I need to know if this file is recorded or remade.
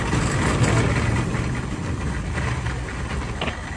recorded